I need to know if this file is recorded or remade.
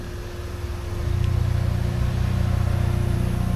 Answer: recorded